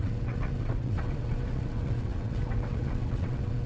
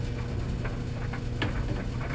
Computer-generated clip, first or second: first